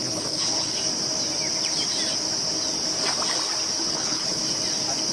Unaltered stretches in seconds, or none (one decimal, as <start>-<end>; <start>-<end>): 0.8-3.9; 4.4-5.1